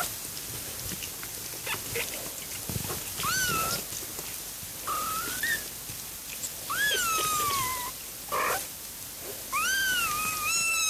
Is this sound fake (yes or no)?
no